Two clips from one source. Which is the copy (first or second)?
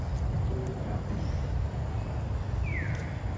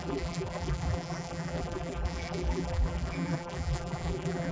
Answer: second